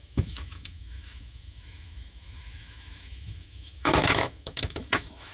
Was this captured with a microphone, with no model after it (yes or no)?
no